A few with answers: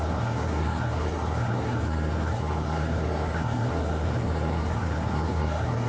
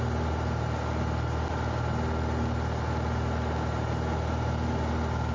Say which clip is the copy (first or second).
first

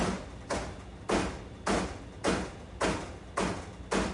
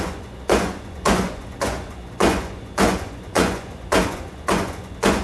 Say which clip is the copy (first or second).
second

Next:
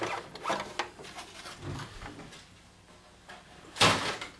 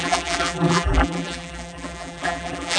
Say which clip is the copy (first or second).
second